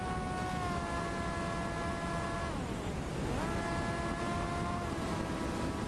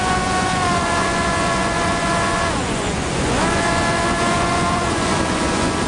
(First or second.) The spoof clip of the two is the second